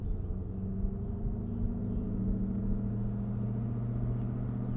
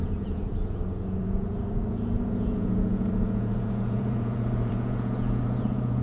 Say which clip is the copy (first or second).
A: second